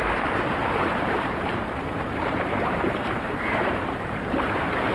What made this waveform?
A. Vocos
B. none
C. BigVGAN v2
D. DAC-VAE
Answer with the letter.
C